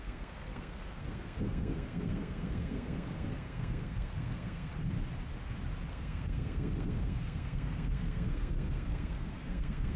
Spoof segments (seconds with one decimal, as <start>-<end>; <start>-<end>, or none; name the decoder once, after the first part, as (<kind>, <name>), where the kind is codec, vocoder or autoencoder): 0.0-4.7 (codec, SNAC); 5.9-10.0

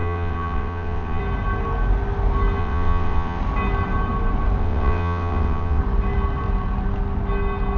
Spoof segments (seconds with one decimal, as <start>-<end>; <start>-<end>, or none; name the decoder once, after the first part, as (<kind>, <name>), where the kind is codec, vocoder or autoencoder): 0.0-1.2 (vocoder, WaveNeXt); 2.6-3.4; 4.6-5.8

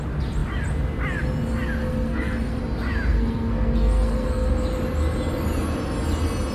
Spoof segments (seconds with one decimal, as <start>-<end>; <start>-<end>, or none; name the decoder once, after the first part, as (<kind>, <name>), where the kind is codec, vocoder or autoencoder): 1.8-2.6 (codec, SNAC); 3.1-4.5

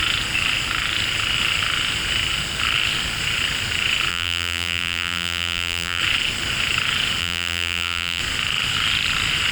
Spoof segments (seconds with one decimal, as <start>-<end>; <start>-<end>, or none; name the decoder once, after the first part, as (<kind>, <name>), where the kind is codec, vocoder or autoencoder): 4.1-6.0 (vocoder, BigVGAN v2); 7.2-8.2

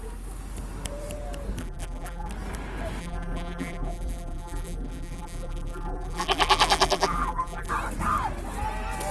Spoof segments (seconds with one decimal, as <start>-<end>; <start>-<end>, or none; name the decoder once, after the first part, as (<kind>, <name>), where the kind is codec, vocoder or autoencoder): 1.6-2.3 (vocoder, BigVGAN v2); 3.0-7.7

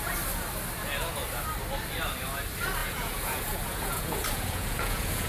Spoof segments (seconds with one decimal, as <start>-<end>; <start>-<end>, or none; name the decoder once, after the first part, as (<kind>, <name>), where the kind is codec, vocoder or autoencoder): 2.8-5.3 (vocoder, Vocos)

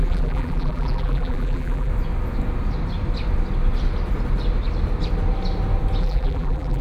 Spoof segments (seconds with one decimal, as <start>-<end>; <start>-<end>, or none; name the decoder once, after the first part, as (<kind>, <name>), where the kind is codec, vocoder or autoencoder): 0.0-1.9 (vocoder, BigVGAN v2); 6.0-6.8

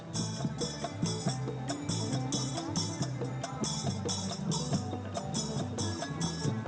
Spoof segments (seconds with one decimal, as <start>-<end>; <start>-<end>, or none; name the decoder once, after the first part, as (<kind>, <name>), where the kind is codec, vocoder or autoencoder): none